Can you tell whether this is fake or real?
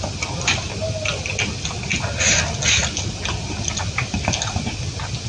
real